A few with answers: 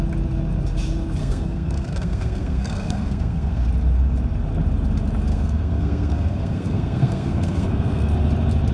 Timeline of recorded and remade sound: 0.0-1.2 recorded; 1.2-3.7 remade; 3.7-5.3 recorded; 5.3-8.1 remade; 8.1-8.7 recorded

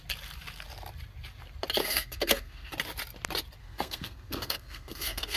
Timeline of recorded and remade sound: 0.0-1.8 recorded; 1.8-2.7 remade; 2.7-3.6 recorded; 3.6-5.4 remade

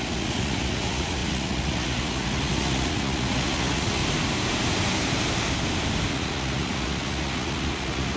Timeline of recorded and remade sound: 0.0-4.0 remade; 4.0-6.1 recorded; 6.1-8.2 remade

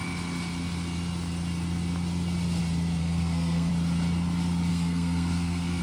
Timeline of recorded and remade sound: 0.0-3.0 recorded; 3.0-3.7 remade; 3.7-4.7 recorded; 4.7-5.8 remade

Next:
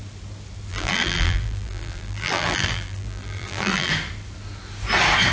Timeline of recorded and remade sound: 0.0-0.7 recorded; 0.7-3.9 remade; 3.9-5.3 recorded

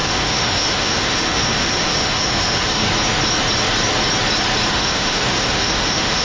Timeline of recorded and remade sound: 0.0-2.8 remade; 2.8-4.7 recorded; 4.7-6.2 remade